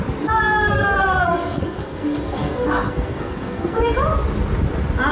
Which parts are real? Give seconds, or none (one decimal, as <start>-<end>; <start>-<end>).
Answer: 0.0-0.8; 3.8-5.1